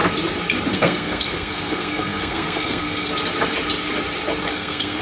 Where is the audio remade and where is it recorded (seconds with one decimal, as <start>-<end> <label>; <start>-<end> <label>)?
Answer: 0.0-0.7 recorded; 0.7-3.1 remade; 3.1-4.5 recorded; 4.5-5.0 remade